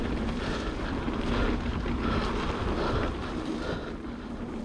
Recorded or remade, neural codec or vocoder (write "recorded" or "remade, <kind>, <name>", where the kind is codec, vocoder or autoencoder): recorded